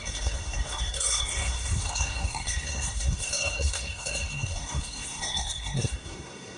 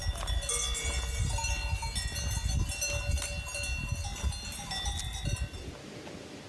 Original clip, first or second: second